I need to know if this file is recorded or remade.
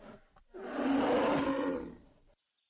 recorded